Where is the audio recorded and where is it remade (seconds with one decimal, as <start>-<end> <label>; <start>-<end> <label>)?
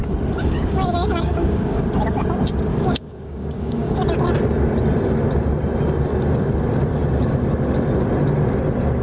0.0-0.4 recorded; 0.4-1.8 remade; 1.8-2.7 recorded; 2.7-3.9 remade; 3.9-9.0 recorded